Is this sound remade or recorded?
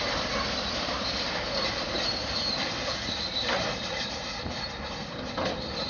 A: remade